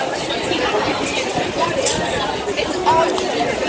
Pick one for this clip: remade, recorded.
recorded